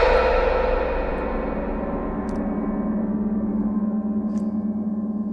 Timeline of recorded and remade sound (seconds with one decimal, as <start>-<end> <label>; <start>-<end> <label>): 0.0-3.0 recorded; 3.0-4.2 remade; 4.2-5.3 recorded